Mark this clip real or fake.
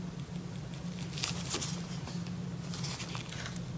real